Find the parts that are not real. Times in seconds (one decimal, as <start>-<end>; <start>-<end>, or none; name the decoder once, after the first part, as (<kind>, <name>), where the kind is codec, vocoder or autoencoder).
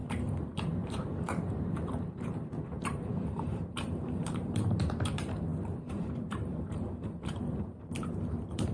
0.0-8.7 (vocoder, BigVGAN v2)